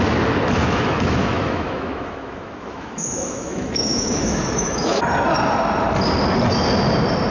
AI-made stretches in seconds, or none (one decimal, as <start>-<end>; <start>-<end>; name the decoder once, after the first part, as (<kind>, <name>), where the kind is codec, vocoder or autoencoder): 0.6-5.0 (autoencoder, DAC-VAE)